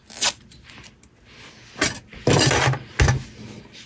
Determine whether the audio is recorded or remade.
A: recorded